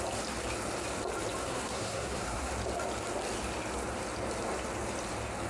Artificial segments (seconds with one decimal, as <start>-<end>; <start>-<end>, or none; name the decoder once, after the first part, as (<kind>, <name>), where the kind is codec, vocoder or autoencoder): 1.4-2.5 (codec, SNAC)